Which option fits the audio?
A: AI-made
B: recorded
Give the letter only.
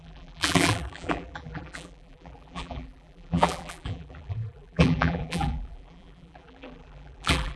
A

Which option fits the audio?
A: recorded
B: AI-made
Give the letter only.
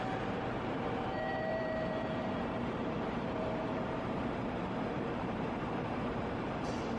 B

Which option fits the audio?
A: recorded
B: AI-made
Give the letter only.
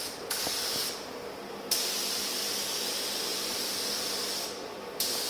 A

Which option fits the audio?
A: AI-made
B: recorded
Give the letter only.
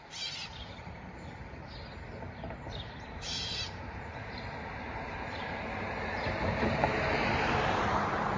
A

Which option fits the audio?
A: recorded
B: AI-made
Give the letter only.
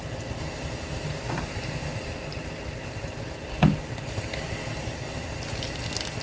A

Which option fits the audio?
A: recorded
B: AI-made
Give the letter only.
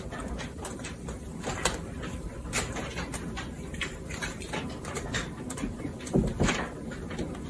B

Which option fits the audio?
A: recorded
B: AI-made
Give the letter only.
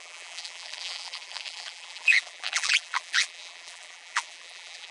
B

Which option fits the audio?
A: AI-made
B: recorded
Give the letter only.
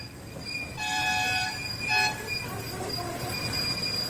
A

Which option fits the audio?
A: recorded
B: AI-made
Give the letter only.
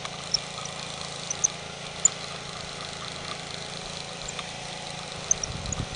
A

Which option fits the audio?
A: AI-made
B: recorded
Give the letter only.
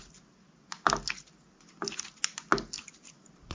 B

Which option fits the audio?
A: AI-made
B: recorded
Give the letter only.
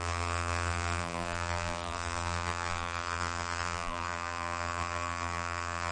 A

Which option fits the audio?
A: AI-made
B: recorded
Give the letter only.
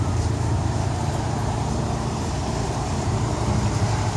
A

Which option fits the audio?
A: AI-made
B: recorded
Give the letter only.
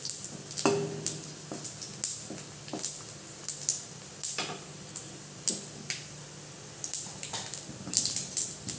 B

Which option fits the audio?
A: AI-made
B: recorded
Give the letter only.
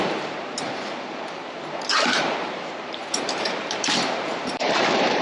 A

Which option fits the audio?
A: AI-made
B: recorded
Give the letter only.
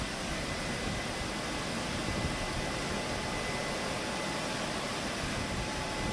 B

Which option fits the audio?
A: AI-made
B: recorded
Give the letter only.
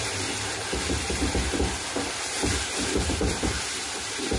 A